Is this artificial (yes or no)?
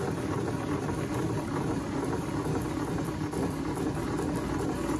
yes